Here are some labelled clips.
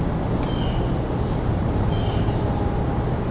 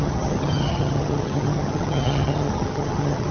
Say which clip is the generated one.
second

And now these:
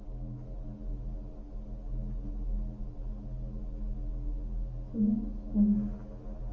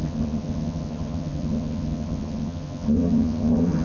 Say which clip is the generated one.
second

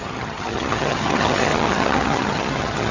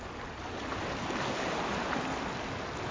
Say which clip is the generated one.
first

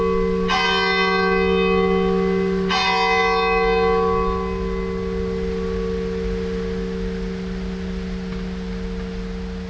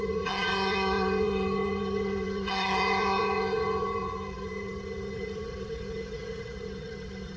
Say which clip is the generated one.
second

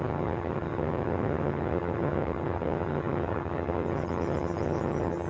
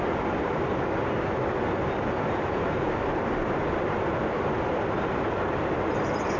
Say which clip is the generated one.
first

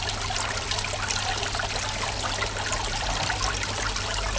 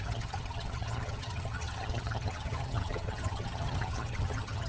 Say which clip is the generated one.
second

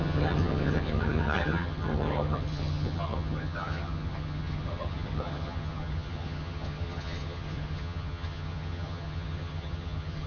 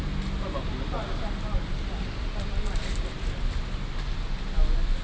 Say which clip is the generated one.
first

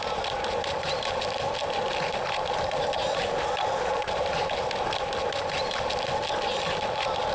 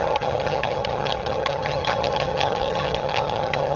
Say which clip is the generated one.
second